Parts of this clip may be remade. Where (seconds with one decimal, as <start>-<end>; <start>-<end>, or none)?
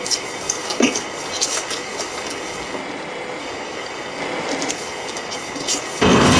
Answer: 0.0-2.8; 3.4-4.2; 4.7-6.4